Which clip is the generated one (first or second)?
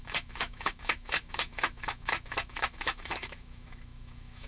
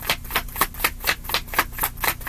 first